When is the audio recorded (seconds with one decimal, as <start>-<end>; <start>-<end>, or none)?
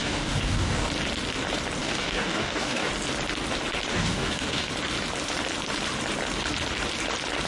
0.9-1.8; 2.9-3.9; 4.7-7.5